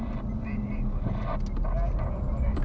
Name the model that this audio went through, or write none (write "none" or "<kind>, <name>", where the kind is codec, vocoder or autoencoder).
none